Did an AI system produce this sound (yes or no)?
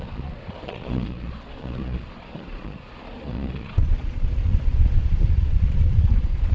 yes